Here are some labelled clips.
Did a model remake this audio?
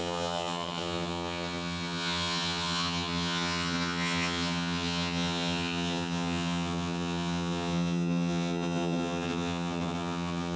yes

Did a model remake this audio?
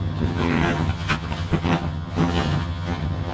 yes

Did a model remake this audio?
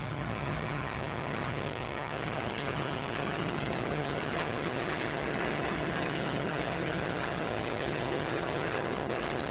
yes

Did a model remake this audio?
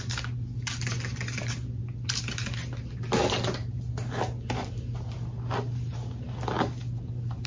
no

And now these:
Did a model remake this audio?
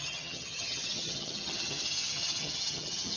yes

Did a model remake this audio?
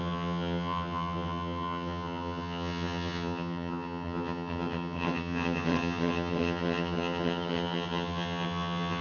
yes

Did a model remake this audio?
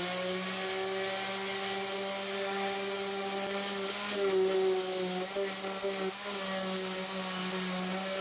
no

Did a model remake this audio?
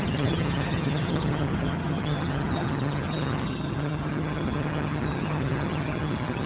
yes